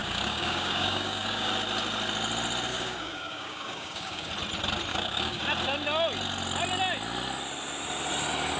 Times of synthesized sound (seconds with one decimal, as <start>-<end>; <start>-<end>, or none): 0.0-1.5; 2.7-4.3; 4.9-5.4